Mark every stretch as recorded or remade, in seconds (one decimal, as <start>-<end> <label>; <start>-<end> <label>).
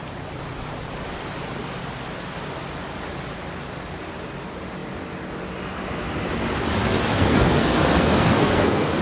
0.0-6.8 recorded; 6.8-9.0 remade